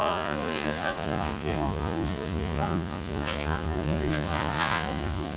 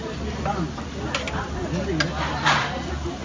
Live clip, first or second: second